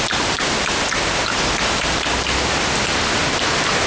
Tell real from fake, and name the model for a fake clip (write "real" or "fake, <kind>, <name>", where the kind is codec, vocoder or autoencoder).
real